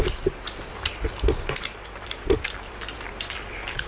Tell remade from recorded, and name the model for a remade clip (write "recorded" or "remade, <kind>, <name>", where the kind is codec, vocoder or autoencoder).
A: recorded